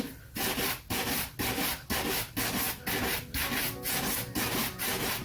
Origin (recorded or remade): recorded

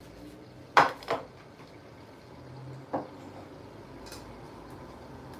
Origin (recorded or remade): recorded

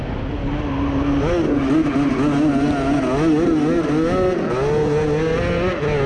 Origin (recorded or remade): recorded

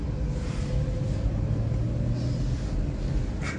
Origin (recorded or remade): recorded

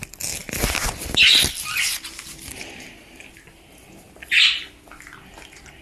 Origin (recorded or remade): recorded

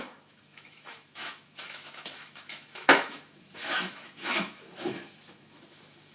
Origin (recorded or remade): remade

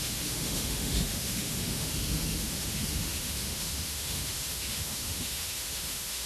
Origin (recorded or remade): remade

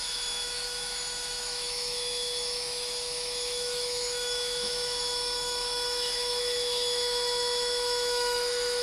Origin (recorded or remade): remade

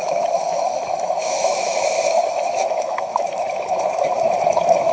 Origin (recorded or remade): remade